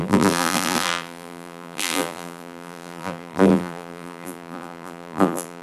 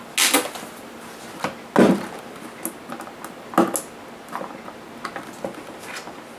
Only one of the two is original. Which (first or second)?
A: second